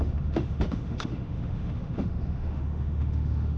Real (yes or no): no